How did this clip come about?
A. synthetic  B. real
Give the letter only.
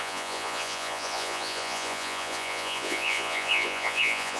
A